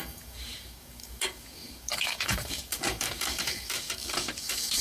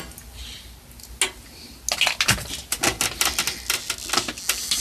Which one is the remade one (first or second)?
first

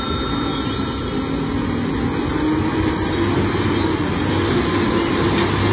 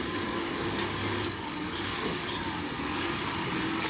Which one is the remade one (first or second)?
second